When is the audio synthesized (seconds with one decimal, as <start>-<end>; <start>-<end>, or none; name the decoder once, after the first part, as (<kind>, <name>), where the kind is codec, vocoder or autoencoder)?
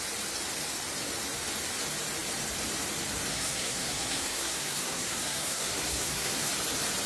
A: 3.3-6.5 (codec, SNAC)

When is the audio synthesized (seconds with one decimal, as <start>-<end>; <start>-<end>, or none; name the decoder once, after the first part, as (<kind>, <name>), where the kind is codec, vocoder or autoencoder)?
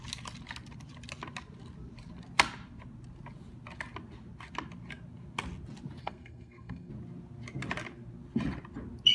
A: 6.0-6.9 (codec, SNAC)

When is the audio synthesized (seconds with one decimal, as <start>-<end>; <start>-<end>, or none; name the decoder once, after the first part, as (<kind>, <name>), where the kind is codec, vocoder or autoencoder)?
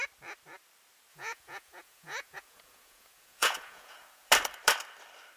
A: 1.1-4.3 (vocoder, Vocos)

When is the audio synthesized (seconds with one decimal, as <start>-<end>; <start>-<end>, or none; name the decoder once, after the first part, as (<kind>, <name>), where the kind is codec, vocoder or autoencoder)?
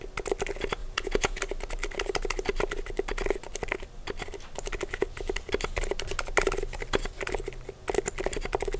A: 0.8-1.4 (vocoder, Vocos)